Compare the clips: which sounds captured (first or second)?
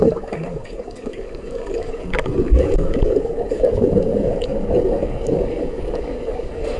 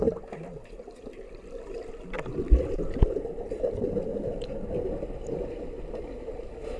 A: second